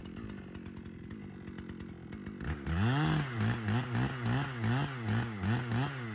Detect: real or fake real